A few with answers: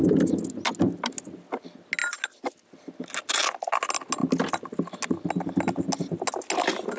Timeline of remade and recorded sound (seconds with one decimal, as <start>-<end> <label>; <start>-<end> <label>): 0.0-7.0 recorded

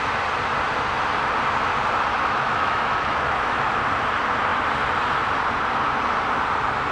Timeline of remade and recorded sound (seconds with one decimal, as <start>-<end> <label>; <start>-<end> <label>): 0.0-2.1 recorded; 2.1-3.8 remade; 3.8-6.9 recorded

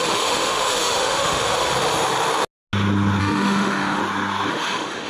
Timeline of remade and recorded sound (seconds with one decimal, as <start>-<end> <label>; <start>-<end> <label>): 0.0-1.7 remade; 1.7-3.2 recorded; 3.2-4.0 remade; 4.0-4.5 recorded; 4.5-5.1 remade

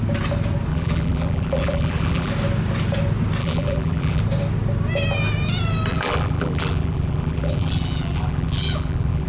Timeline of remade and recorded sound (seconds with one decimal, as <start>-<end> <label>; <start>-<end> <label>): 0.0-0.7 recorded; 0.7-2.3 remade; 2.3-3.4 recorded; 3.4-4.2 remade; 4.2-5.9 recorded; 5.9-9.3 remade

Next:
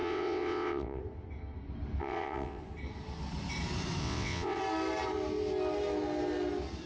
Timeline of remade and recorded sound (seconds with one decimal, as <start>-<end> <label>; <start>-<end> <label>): 0.0-1.0 remade; 1.0-2.0 recorded; 2.0-2.6 remade; 2.6-4.0 recorded; 4.0-4.6 remade; 4.6-6.9 recorded

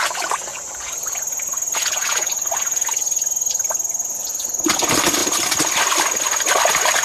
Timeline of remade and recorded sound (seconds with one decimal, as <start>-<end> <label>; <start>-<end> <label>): 0.0-0.5 recorded; 0.5-3.5 remade; 3.5-4.0 recorded; 4.0-4.5 remade; 4.5-7.0 recorded

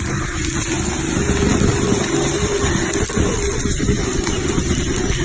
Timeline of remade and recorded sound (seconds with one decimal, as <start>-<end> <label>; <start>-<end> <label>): 0.0-5.2 recorded